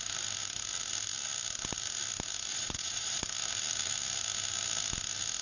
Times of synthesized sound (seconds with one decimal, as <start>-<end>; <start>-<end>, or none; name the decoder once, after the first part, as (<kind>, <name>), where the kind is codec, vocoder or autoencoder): 2.5-3.2 (vocoder, Vocos)